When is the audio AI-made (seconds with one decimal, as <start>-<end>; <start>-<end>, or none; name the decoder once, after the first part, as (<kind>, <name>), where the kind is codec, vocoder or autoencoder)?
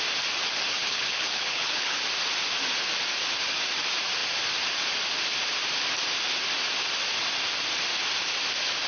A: 0.7-2.0 (codec, HILCodec)